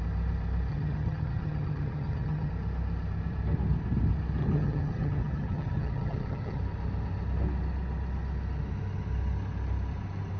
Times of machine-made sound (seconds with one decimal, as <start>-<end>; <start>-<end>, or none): 0.7-2.5; 4.4-6.6